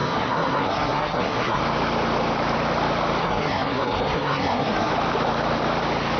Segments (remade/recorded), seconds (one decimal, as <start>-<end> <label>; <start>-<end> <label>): 0.0-1.6 remade; 1.6-3.2 recorded; 3.2-4.9 remade; 4.9-6.2 recorded